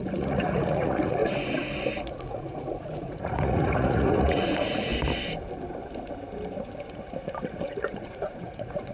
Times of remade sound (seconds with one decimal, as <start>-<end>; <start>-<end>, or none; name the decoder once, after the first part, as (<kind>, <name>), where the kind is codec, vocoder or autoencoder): 0.0-1.2 (vocoder, Vocos); 2.1-4.9; 7.6-8.9